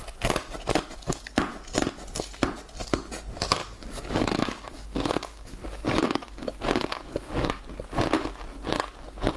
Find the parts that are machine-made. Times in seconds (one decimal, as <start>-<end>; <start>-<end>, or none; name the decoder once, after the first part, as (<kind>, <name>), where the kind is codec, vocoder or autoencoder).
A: 3.6-7.6 (codec, DAC)